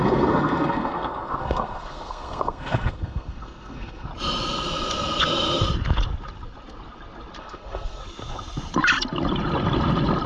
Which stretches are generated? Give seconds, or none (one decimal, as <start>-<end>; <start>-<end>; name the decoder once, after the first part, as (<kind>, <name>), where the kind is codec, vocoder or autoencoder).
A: 0.0-4.1 (codec, SNAC); 7.4-8.0